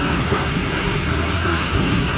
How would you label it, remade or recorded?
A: remade